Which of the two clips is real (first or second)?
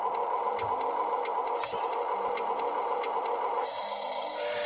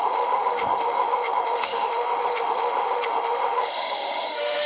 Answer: first